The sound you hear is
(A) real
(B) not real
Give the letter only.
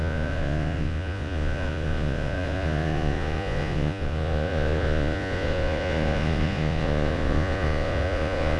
B